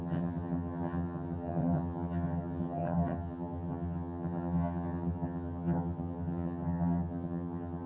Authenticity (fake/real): fake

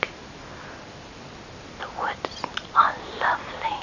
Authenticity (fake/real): real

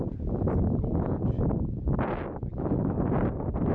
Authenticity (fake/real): real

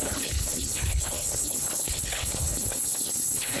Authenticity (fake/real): fake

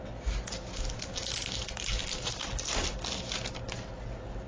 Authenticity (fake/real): real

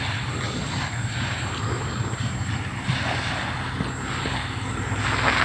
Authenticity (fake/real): real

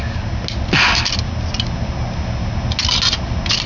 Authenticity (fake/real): real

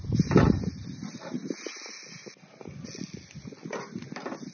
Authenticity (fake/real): real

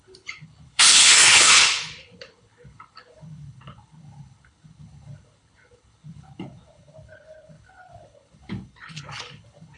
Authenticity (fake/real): fake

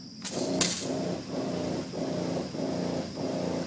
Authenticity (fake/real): real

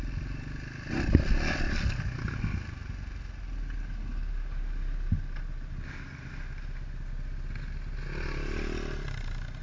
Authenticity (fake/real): real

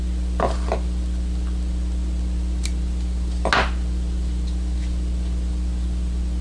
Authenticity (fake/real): real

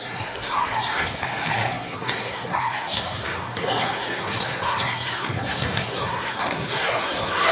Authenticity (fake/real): fake